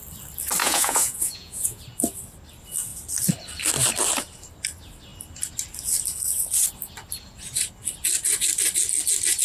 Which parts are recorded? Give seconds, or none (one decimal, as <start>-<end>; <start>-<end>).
0.0-0.6; 1.8-9.4